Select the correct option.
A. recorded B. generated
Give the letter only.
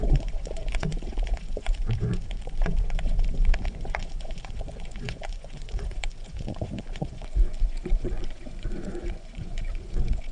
B